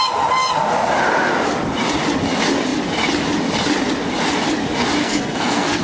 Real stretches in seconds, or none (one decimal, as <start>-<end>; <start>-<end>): 0.0-5.0